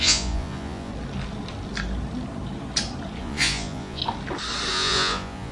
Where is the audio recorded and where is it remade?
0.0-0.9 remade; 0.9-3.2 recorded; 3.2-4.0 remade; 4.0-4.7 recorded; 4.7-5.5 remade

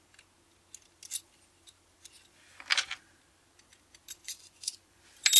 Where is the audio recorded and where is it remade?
0.0-4.2 recorded; 4.2-5.0 remade; 5.0-5.4 recorded

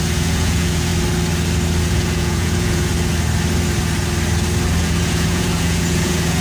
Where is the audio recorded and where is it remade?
0.0-0.9 remade; 0.9-1.8 recorded; 1.8-2.9 remade; 2.9-4.8 recorded; 4.8-6.4 remade

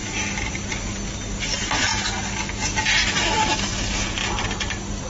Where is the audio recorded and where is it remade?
0.0-5.1 recorded

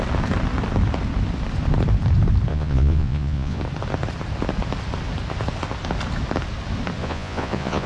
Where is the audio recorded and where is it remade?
0.0-2.5 recorded; 2.5-3.6 remade; 3.6-7.0 recorded; 7.0-7.9 remade

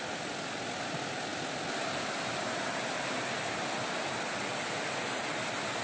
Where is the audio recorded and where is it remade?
0.0-5.8 recorded

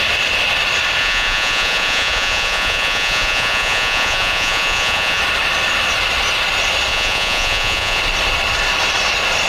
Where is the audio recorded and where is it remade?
0.0-1.0 recorded; 1.0-5.2 remade; 5.2-6.9 recorded; 6.9-8.0 remade; 8.0-9.5 recorded

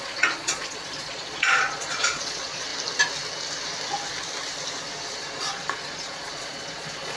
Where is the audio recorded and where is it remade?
0.0-2.7 remade; 2.7-5.2 recorded; 5.2-7.2 remade